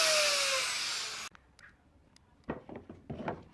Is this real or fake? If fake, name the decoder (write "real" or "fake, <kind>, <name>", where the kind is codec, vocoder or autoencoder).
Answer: real